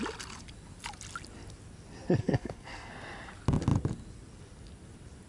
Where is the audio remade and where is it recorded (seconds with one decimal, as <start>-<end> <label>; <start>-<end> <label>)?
0.0-2.2 recorded; 2.2-2.9 remade; 2.9-5.3 recorded